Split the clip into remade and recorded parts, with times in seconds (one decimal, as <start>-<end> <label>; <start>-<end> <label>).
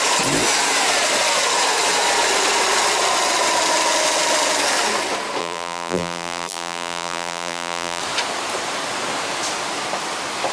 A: 0.0-5.4 recorded; 5.4-8.0 remade; 8.0-10.5 recorded